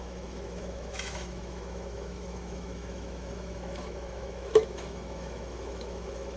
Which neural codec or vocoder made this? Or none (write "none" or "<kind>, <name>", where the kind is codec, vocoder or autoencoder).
autoencoder, DAC-VAE